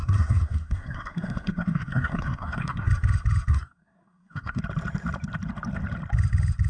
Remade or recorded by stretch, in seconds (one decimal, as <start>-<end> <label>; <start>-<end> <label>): 0.0-2.9 remade; 2.9-3.5 recorded; 3.5-4.6 remade; 4.6-6.7 recorded

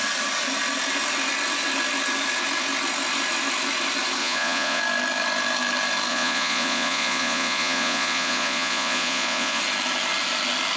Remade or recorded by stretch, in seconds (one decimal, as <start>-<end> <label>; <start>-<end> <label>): 0.0-4.2 recorded; 4.2-4.8 remade; 4.8-6.1 recorded; 6.1-9.6 remade; 9.6-10.8 recorded